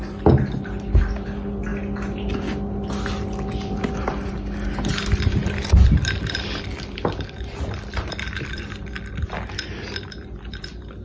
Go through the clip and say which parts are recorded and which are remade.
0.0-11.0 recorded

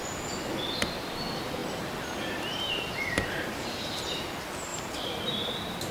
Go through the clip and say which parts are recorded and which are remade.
0.0-1.6 recorded; 1.6-4.2 remade; 4.2-4.7 recorded; 4.7-5.9 remade

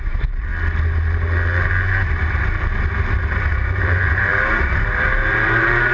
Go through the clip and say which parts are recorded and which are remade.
0.0-0.5 remade; 0.5-3.8 recorded; 3.8-5.9 remade

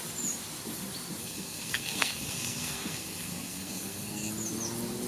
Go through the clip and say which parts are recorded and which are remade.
0.0-1.2 recorded; 1.2-4.3 remade; 4.3-5.1 recorded

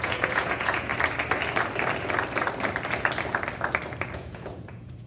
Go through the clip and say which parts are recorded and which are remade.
0.0-0.9 remade; 0.9-4.0 recorded; 4.0-5.1 remade

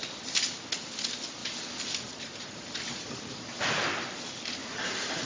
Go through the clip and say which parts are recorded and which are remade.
0.0-1.4 recorded; 1.4-3.9 remade; 3.9-4.6 recorded; 4.6-5.3 remade

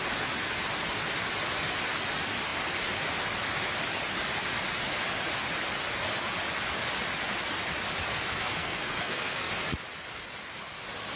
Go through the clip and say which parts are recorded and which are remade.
0.0-8.1 recorded; 8.1-9.5 remade; 9.5-11.2 recorded

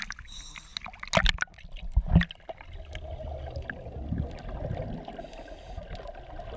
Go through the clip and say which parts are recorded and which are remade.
0.0-6.6 recorded